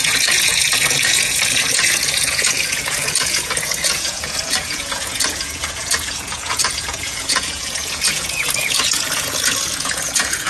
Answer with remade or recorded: remade